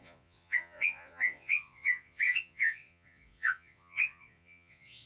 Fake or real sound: fake